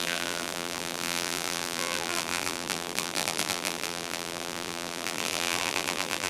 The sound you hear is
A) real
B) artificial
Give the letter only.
B